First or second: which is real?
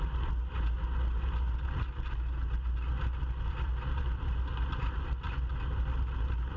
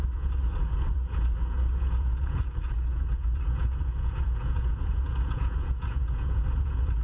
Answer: first